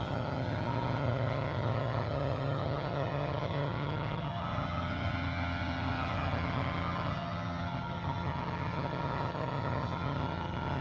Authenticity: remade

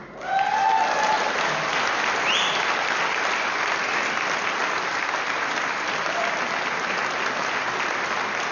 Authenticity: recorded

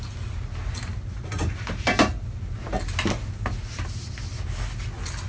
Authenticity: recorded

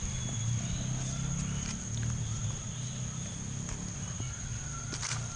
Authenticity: recorded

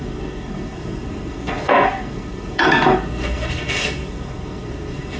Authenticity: remade